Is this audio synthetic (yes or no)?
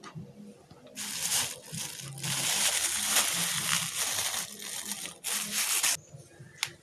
no